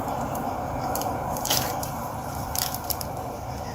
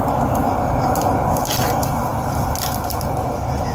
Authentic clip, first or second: second